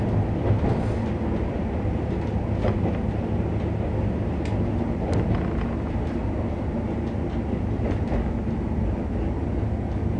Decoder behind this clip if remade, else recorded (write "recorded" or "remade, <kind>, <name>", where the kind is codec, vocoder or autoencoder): recorded